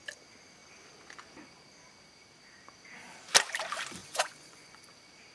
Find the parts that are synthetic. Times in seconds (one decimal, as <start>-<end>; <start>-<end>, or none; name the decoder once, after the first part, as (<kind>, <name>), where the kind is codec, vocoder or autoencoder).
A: 4.0-4.8 (vocoder, Vocos)